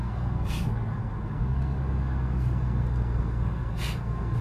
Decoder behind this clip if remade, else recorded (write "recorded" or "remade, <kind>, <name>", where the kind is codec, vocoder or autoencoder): remade, codec, SNAC